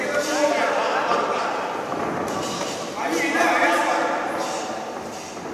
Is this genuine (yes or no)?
yes